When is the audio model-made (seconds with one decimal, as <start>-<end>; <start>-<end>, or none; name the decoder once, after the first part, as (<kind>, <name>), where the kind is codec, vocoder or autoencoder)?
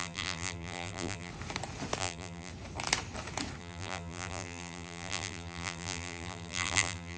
0.0-1.3 (vocoder, BigVGAN v2); 2.0-2.5; 3.6-7.2